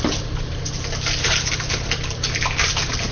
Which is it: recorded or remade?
recorded